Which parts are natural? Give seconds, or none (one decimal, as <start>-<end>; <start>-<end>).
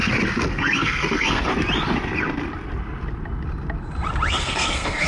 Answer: 0.0-0.5; 1.5-4.3